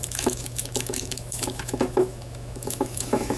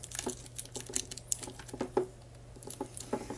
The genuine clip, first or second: second